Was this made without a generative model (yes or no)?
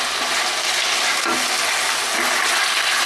yes